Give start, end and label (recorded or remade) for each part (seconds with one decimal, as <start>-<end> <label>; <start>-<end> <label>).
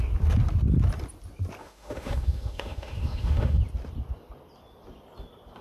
0.0-1.6 recorded; 1.6-3.6 remade; 3.6-5.6 recorded